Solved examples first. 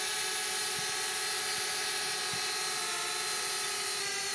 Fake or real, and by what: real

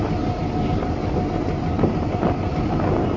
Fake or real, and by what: real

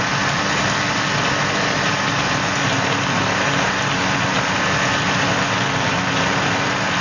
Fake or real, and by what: real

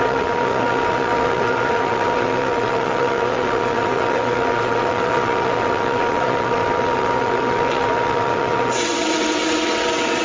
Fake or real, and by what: fake, vocoder, WaveNeXt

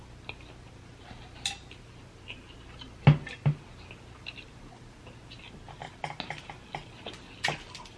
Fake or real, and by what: real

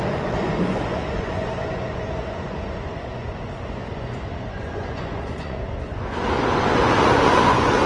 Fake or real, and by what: fake, vocoder, Vocos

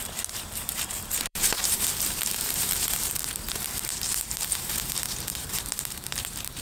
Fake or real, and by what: fake, vocoder, BigVGAN v2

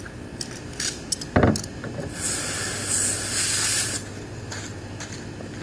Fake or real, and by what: real